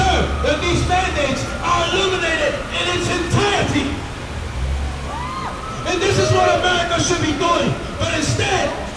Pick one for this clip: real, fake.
real